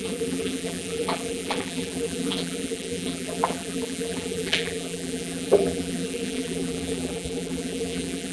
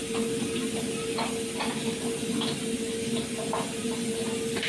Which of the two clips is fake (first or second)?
first